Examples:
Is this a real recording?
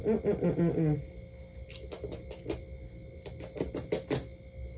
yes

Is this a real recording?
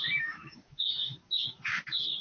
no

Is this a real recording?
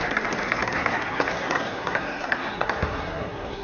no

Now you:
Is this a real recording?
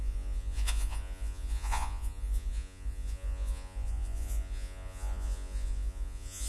no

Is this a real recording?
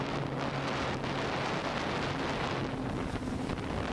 yes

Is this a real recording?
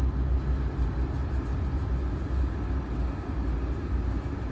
yes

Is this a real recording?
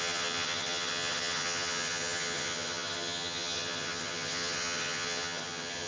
no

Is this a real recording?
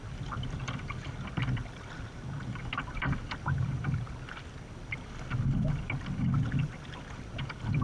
yes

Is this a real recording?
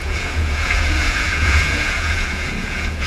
no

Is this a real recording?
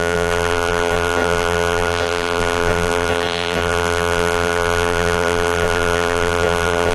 no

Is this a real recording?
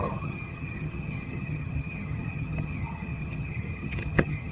no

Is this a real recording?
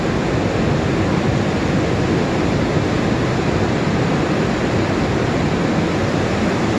yes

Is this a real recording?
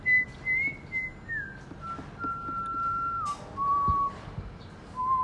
yes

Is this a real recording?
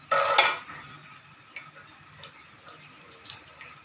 yes